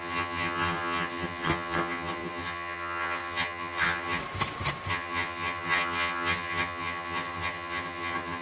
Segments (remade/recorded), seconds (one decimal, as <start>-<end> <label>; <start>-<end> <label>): 0.0-4.2 remade; 4.2-4.9 recorded; 4.9-8.4 remade